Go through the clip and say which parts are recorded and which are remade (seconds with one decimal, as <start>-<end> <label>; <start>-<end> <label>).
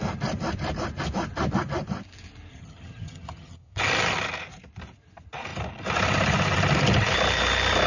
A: 0.0-2.5 recorded; 2.5-3.8 remade; 3.8-7.9 recorded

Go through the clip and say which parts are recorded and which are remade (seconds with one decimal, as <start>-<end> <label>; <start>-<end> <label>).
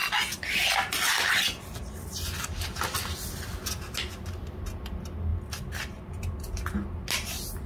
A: 0.0-5.3 recorded; 5.3-6.2 remade; 6.2-7.7 recorded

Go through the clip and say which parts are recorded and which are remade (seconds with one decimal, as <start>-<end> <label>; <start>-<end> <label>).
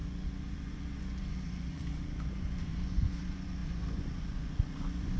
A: 0.0-5.2 remade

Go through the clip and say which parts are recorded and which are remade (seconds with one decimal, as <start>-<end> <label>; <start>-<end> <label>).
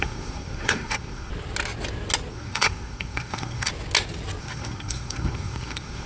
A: 0.0-1.3 remade; 1.3-2.3 recorded; 2.3-3.7 remade; 3.7-4.4 recorded; 4.4-6.1 remade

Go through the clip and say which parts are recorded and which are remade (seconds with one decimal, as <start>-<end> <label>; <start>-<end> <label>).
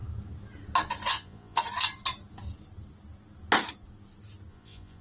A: 0.0-1.1 recorded; 1.1-1.6 remade; 1.6-4.5 recorded; 4.5-5.0 remade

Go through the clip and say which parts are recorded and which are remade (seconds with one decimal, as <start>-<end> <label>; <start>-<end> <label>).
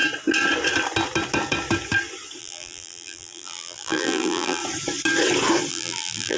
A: 0.0-2.4 recorded; 2.4-4.6 remade; 4.6-5.7 recorded; 5.7-6.4 remade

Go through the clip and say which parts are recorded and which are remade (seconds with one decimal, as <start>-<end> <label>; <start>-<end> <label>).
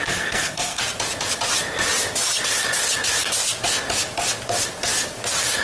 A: 0.0-0.8 remade; 0.8-5.6 recorded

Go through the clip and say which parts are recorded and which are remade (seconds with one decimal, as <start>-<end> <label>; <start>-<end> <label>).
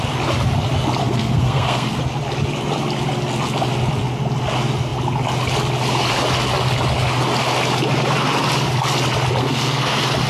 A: 0.0-1.0 recorded; 1.0-2.0 remade; 2.0-9.4 recorded; 9.4-9.9 remade; 9.9-10.3 recorded